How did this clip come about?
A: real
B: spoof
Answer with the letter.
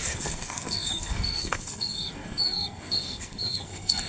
B